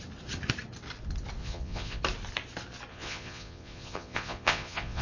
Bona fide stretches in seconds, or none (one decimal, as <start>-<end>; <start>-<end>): 0.0-1.4; 2.0-2.9